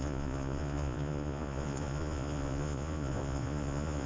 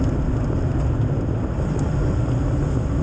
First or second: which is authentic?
second